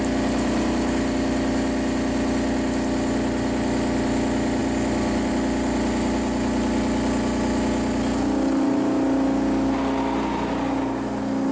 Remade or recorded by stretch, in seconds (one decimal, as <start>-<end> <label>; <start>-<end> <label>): 0.0-11.5 recorded